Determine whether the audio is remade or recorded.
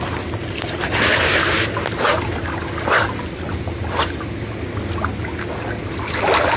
recorded